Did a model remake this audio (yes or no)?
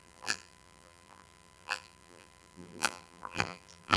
yes